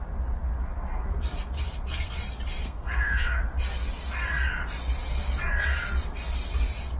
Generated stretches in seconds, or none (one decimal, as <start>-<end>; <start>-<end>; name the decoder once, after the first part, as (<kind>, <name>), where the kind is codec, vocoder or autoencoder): 2.6-3.4 (codec, SNAC)